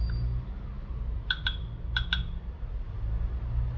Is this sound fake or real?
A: real